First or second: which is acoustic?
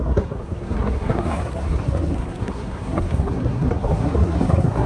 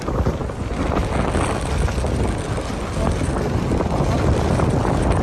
second